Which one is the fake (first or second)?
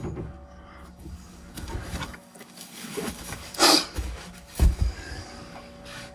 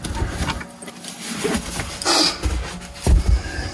first